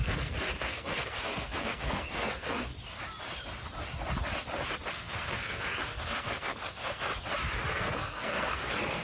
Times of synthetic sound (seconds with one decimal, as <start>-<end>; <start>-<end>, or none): 0.0-2.7; 4.9-7.1; 7.7-9.0